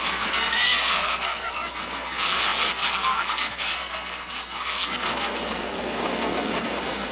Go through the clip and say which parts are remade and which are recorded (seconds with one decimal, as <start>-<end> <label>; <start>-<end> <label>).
0.0-7.1 remade